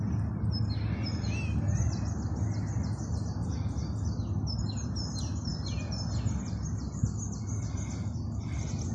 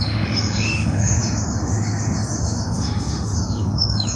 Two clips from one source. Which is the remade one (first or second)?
second